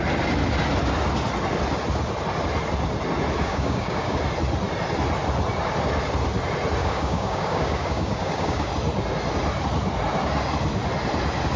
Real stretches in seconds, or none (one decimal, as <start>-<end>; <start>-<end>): 0.0-3.4; 4.2-6.8; 8.7-11.6